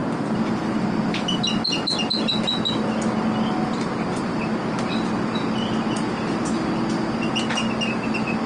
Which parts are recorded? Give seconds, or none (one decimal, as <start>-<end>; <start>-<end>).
0.0-8.5